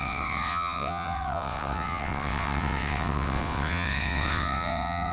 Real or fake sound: fake